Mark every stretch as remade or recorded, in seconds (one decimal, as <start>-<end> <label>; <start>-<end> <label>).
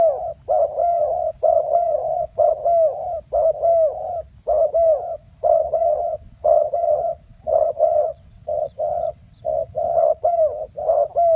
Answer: 0.0-0.8 recorded; 0.8-2.5 remade; 2.5-5.2 recorded; 5.2-10.4 remade; 10.4-11.4 recorded